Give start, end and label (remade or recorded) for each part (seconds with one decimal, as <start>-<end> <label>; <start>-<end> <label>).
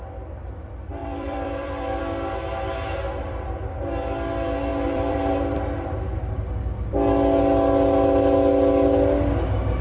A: 0.0-1.0 recorded; 1.0-2.0 remade; 2.0-4.7 recorded; 4.7-6.5 remade; 6.5-9.8 recorded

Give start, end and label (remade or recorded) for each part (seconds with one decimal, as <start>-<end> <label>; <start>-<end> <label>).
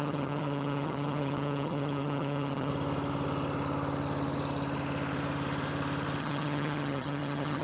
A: 0.0-2.7 remade; 2.7-6.2 recorded; 6.2-7.6 remade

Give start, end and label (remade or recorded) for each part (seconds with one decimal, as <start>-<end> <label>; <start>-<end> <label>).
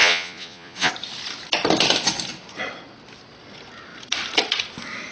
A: 0.0-0.9 remade; 0.9-5.1 recorded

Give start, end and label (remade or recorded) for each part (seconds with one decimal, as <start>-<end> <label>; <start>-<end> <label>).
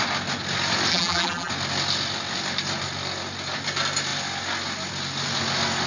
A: 0.0-0.9 recorded; 0.9-1.5 remade; 1.5-5.9 recorded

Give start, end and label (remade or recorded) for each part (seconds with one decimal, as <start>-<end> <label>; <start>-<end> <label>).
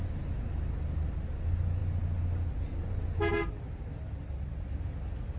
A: 0.0-5.4 recorded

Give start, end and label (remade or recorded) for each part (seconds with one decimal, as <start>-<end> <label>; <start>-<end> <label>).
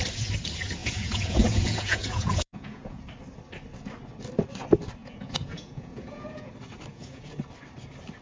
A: 0.0-0.8 recorded; 0.8-3.0 remade; 3.0-5.0 recorded; 5.0-6.5 remade; 6.5-6.9 recorded; 6.9-7.4 remade; 7.4-8.2 recorded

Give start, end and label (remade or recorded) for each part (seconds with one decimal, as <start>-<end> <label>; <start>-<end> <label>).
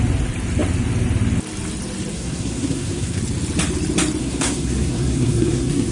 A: 0.0-2.1 recorded; 2.1-3.2 remade; 3.2-4.2 recorded; 4.2-5.9 remade